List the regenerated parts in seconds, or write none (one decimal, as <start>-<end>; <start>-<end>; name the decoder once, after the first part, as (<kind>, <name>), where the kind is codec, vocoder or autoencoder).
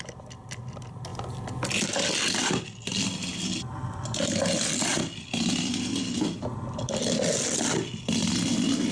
none